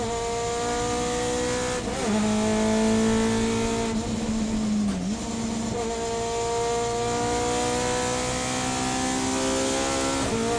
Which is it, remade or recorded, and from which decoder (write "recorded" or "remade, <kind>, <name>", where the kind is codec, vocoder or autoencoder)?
recorded